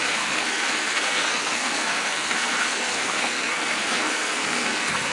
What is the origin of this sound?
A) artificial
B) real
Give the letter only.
A